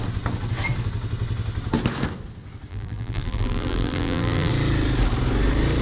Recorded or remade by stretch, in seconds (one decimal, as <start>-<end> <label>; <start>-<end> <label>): 0.0-2.7 recorded; 2.7-4.5 remade; 4.5-5.8 recorded